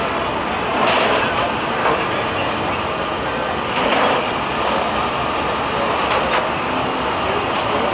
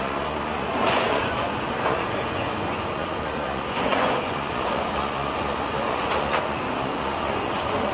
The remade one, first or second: second